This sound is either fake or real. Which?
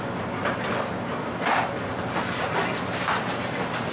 real